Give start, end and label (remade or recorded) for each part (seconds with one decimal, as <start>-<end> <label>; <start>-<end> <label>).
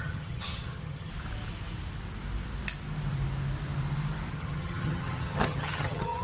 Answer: 0.0-1.1 remade; 1.1-4.3 recorded; 4.3-6.2 remade